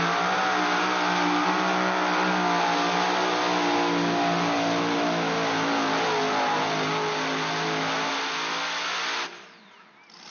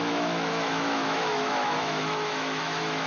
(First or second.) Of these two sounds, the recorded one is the first